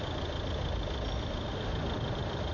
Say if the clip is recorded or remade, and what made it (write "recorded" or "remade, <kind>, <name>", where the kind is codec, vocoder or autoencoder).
recorded